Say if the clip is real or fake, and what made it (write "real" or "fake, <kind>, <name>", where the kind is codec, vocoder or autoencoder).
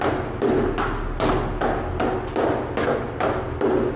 real